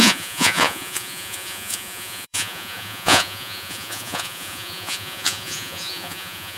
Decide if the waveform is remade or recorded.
remade